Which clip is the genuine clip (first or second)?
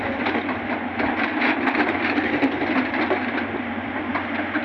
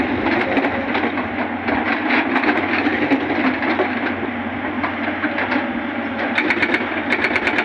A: second